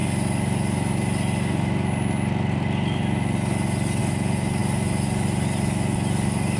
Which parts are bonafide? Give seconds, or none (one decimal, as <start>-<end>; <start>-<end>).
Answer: 0.0-6.6